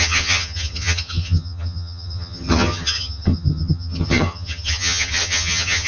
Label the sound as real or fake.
fake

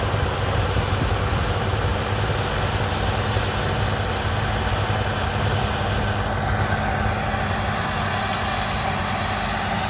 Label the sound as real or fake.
real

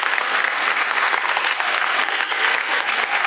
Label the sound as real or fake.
fake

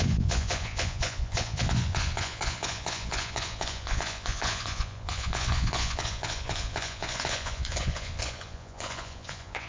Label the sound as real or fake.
fake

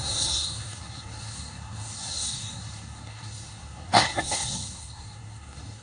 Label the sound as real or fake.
fake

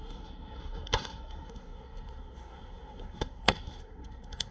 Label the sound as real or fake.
fake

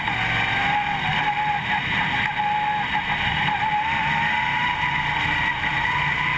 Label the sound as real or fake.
real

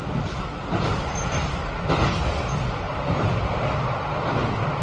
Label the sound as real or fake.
real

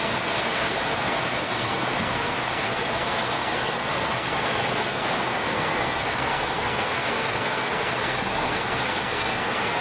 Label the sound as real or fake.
fake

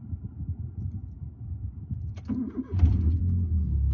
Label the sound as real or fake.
real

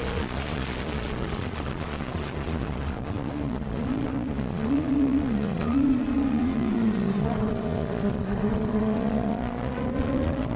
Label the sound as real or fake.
fake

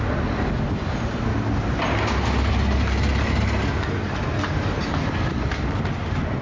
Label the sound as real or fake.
real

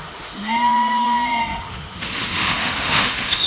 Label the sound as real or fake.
fake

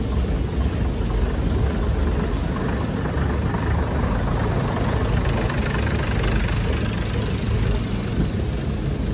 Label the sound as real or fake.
real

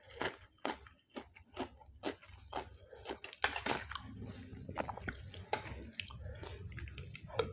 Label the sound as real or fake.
real